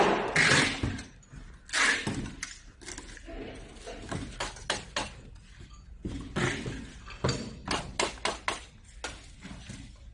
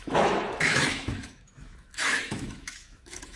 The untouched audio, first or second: first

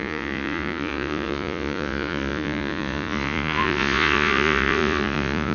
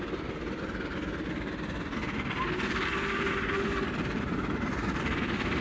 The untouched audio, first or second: second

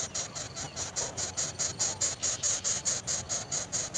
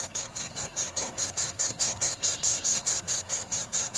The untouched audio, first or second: first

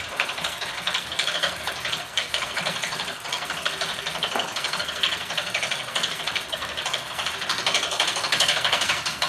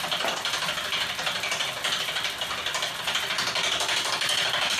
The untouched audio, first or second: second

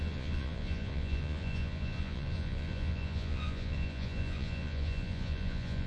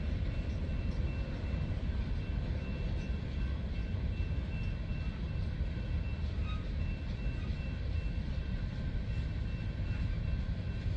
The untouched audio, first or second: second